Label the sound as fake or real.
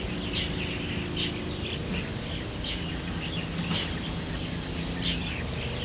real